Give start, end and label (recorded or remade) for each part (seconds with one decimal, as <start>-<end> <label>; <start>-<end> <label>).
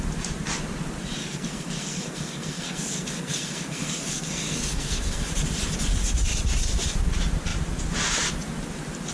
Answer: 0.0-1.2 recorded; 1.2-5.2 remade; 5.2-9.1 recorded